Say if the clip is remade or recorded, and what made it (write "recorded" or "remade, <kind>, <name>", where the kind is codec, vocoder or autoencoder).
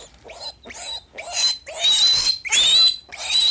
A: recorded